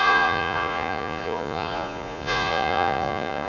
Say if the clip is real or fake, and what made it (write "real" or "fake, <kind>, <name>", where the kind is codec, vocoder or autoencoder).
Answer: fake, vocoder, Vocos